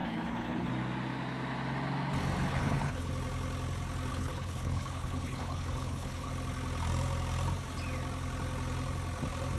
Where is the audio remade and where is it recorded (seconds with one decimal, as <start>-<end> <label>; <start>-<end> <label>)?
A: 0.0-0.7 remade; 0.7-2.5 recorded; 2.5-3.1 remade; 3.1-4.1 recorded; 4.1-6.3 remade; 6.3-9.6 recorded